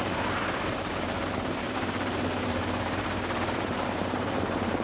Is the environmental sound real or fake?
fake